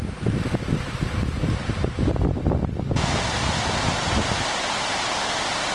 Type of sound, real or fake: real